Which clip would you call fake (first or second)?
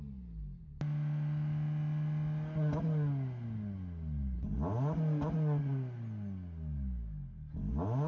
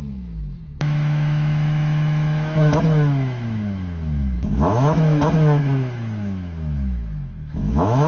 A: second